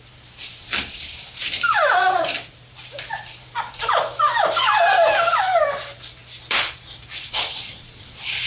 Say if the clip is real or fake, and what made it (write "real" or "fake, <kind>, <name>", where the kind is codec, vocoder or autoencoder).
fake, vocoder, BigVGAN v2